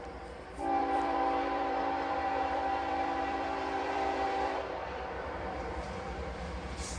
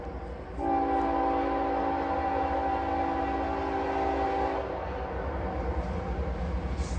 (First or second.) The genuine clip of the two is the second